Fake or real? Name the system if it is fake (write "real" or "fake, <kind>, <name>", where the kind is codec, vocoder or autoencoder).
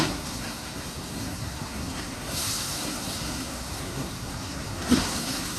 fake, codec, SNAC